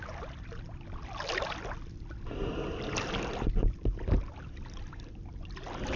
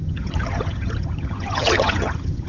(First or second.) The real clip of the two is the first